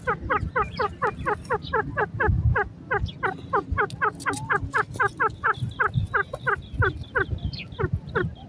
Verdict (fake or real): real